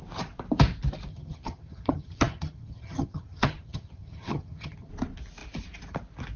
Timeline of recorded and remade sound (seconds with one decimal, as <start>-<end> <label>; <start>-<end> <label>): 0.0-1.1 recorded; 1.1-4.9 remade; 4.9-6.4 recorded